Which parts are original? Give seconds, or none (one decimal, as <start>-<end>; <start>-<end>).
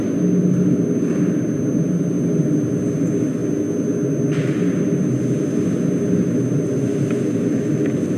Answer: 0.0-8.2